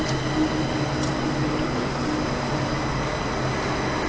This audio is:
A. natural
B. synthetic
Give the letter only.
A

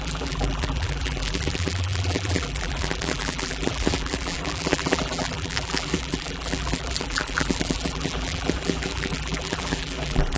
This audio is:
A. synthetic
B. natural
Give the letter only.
A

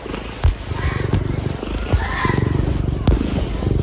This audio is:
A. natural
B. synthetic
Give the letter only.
A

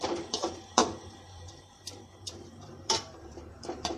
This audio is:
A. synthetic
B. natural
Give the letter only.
A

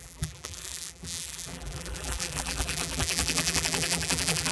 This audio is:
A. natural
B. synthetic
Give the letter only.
B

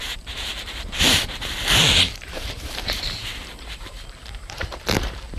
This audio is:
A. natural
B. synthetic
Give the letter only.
B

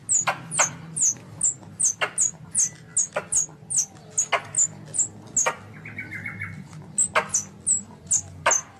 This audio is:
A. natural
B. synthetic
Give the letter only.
A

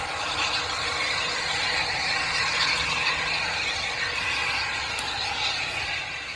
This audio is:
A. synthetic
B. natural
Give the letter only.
B